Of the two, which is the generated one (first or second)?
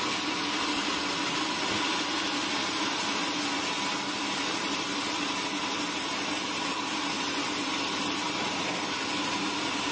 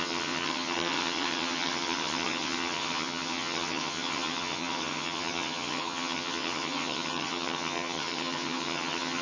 second